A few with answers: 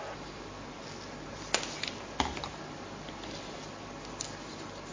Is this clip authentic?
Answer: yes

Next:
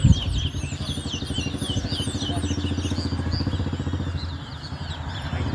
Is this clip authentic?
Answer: yes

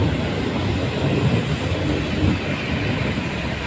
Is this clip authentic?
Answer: yes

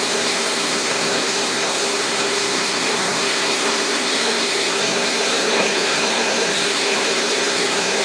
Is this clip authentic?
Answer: no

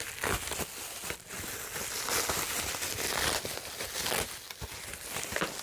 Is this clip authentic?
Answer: yes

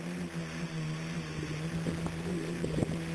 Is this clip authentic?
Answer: yes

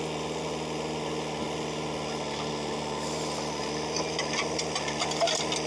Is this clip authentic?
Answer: yes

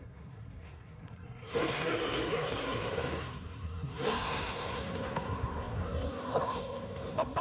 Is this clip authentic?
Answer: no